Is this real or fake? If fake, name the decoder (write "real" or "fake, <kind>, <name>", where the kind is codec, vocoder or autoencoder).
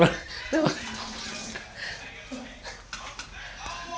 real